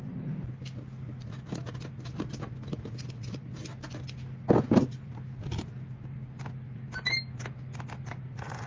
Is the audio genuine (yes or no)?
yes